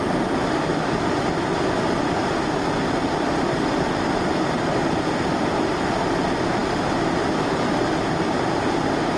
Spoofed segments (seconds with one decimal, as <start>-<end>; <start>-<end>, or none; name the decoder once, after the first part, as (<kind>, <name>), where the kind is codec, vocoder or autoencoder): 0.7-5.5 (vocoder, BigVGAN v2)